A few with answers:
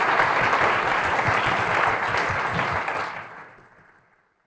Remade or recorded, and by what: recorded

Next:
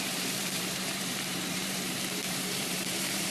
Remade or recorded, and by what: remade, vocoder, BigVGAN v2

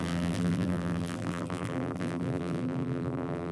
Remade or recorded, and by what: remade, vocoder, BigVGAN v2